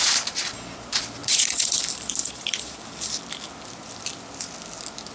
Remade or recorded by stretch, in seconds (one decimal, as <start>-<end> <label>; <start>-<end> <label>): 0.0-1.2 recorded; 1.2-1.8 remade; 1.8-2.2 recorded; 2.2-2.8 remade; 2.8-5.1 recorded